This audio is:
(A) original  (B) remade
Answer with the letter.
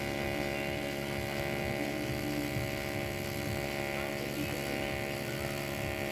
A